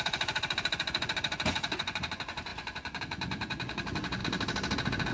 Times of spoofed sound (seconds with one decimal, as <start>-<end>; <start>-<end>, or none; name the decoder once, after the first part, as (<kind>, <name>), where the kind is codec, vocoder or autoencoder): 0.0-4.2 (vocoder, Vocos)